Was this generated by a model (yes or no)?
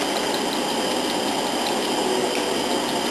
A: no